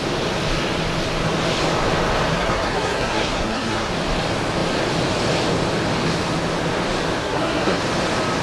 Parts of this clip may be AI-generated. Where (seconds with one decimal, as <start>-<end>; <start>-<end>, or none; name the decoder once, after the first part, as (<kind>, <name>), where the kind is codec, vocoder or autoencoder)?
2.3-3.9 (codec, SNAC); 7.2-7.8